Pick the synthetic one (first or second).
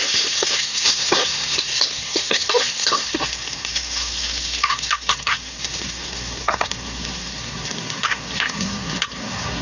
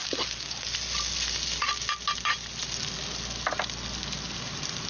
first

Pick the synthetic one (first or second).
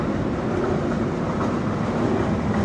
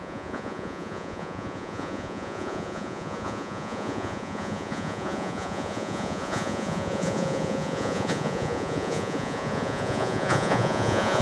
second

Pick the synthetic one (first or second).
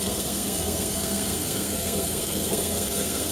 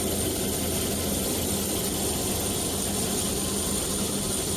first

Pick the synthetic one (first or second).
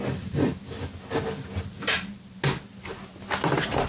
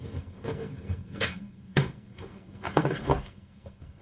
second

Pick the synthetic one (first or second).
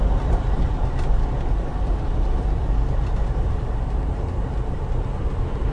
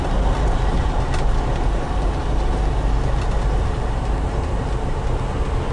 first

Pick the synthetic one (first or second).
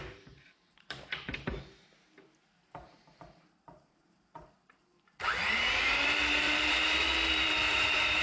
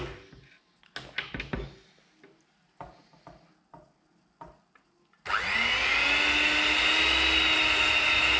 first